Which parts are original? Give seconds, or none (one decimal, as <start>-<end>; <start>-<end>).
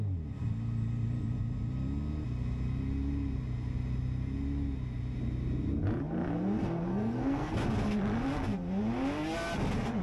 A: 0.0-6.9; 7.5-10.0